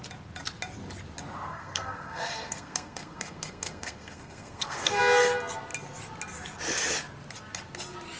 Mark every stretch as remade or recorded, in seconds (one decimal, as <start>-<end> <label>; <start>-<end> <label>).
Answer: 0.0-1.5 recorded; 1.5-5.0 remade; 5.0-8.2 recorded